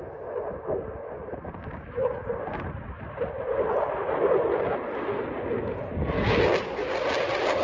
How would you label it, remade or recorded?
recorded